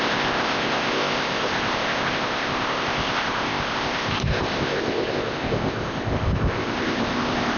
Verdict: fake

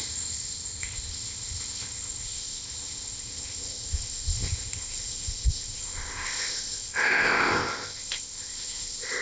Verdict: fake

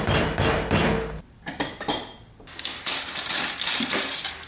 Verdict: real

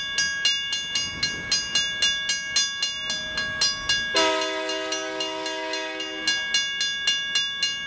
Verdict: real